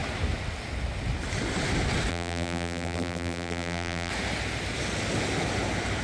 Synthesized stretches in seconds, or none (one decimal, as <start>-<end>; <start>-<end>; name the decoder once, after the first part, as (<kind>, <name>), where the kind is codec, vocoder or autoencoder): 2.1-4.1 (vocoder, BigVGAN v2)